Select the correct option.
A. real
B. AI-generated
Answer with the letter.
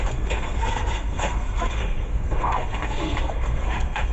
B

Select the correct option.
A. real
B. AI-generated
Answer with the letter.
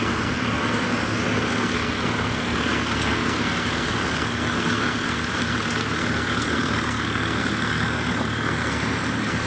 B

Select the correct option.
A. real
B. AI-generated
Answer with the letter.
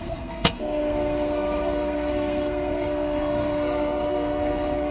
B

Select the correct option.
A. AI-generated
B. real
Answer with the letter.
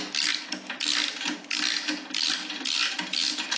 B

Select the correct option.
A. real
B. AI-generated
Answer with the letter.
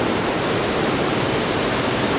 A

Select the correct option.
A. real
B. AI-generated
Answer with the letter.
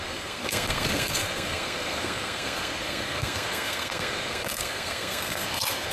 B